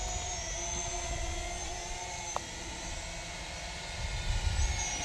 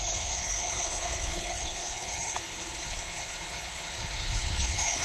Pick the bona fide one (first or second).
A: first